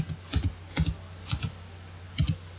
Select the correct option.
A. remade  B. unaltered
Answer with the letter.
B